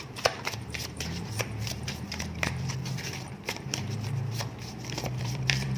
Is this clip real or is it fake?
fake